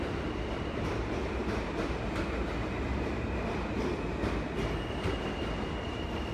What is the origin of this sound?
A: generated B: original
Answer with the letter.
B